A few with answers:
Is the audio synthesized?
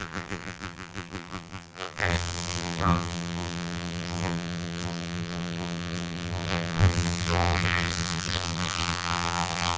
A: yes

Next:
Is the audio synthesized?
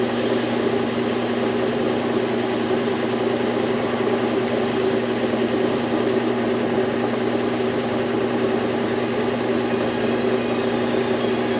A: no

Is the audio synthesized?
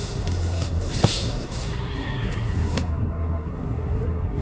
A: yes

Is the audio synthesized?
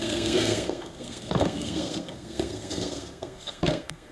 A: yes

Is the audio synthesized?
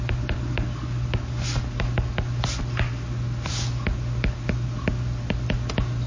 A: no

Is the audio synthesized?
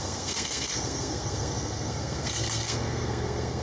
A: yes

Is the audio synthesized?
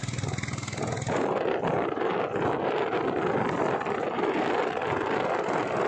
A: no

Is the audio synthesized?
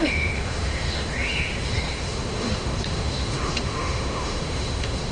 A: yes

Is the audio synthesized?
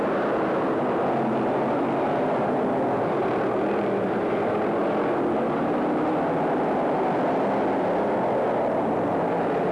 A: no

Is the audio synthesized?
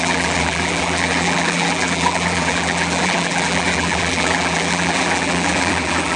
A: yes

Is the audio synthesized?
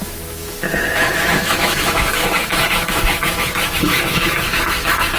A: yes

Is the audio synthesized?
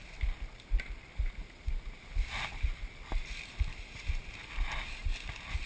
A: no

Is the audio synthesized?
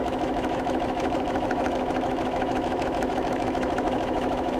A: yes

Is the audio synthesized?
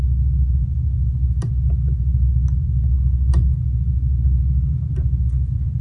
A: no